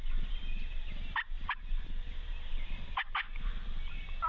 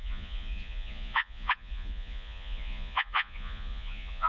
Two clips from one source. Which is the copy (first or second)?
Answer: second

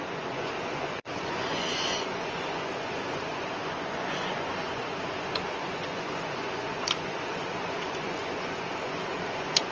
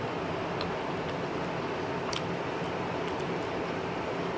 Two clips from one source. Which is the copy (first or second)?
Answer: first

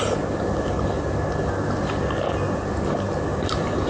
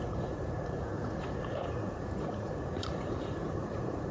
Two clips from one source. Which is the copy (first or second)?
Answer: second